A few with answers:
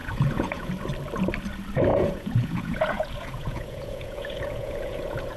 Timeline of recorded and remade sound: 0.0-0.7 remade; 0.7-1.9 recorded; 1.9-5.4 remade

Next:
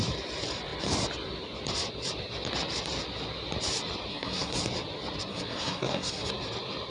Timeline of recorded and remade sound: 0.0-4.1 recorded; 4.1-4.6 remade; 4.6-5.3 recorded; 5.3-6.3 remade; 6.3-6.9 recorded

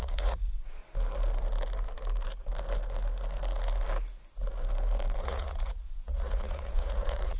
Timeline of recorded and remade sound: 0.0-0.8 remade; 0.8-5.2 recorded; 5.2-7.4 remade

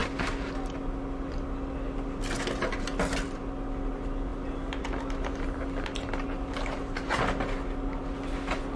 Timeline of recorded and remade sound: 0.0-8.8 recorded

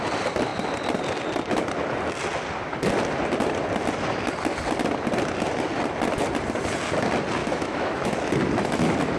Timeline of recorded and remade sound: 0.0-7.4 recorded; 7.4-8.1 remade; 8.1-9.2 recorded